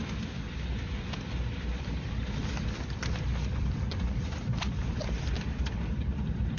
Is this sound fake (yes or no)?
yes